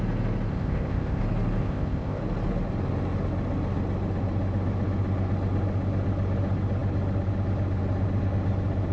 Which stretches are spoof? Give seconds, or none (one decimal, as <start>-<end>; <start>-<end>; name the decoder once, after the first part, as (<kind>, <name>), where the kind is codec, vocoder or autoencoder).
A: 0.5-1.2 (codec, ZipCodec); 1.6-2.2